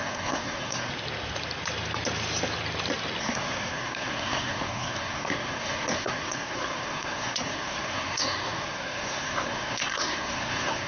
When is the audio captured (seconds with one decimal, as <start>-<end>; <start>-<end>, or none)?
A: 0.9-3.2